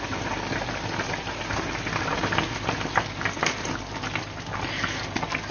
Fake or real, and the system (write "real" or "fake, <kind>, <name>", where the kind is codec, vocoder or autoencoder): real